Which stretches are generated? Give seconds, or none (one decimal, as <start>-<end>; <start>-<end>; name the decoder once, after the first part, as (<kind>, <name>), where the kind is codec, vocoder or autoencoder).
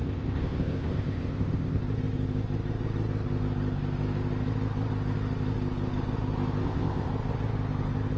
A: 0.0-1.8 (codec, ZipCodec); 6.6-7.1